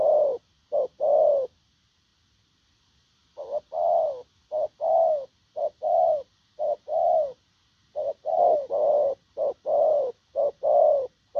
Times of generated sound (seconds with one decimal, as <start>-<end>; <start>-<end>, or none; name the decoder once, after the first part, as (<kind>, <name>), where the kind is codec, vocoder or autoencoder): 0.0-2.1 (vocoder, BigVGAN v2); 5.6-11.4